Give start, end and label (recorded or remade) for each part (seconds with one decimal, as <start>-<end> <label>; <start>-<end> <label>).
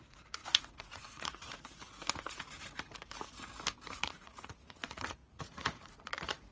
0.0-1.8 remade; 1.8-3.9 recorded; 3.9-6.5 remade